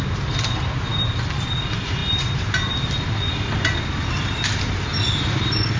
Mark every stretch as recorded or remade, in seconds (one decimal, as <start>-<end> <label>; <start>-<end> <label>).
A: 0.0-4.9 recorded; 4.9-5.8 remade